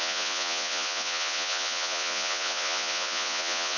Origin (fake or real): fake